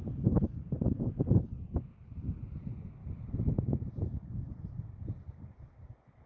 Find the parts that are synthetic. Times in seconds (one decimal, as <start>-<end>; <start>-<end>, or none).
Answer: 1.9-2.4; 3.0-3.5